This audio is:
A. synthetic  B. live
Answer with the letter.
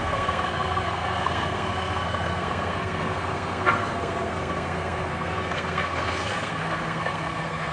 A